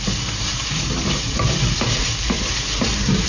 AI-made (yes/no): yes